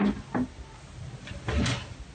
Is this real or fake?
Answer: real